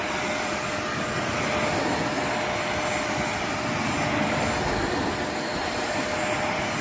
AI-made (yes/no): no